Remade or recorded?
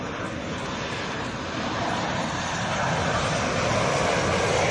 recorded